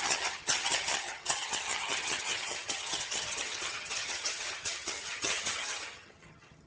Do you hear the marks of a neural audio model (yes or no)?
yes